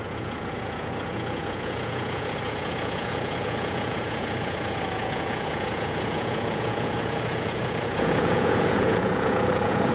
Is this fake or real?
fake